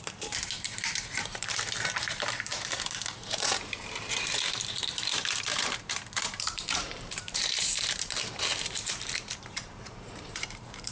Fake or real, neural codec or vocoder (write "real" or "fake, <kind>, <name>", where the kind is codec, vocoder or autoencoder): fake, vocoder, BigVGAN v2